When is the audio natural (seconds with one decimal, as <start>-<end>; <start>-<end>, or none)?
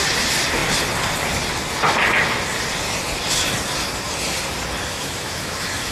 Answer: 0.0-4.9